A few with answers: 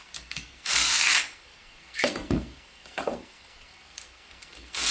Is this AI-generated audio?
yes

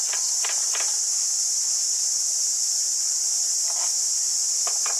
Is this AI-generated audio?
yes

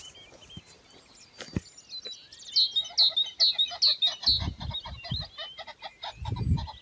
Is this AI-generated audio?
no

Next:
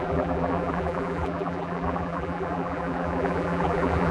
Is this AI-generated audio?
yes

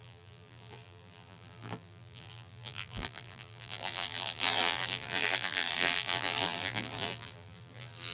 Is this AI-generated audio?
yes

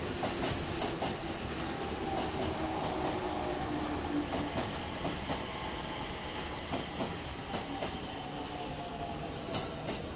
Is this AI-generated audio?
no